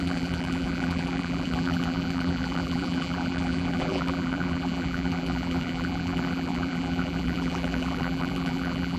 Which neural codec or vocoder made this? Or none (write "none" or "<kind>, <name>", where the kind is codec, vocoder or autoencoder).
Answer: vocoder, BigVGAN v2